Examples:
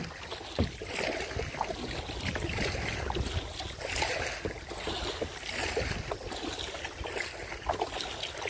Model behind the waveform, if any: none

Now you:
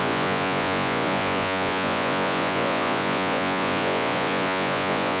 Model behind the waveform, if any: vocoder, Vocos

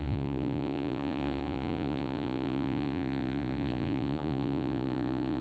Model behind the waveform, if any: vocoder, Vocos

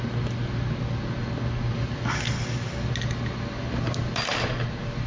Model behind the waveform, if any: none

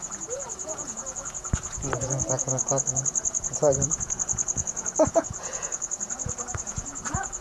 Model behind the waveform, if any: vocoder, Vocos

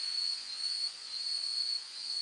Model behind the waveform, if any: vocoder, Vocos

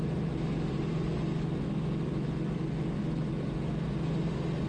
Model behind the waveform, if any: none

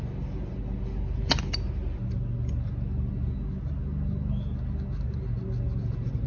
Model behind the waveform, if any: none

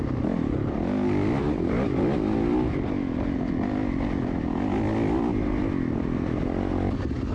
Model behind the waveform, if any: none